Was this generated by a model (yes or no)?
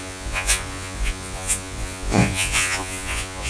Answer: yes